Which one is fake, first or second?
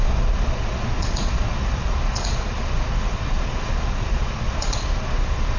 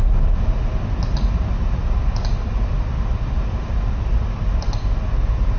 first